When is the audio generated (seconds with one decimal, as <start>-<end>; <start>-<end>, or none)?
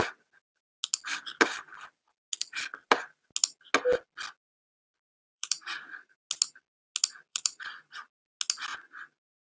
5.1-6.2; 7.3-7.9